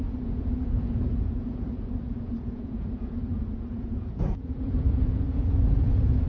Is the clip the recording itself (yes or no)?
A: no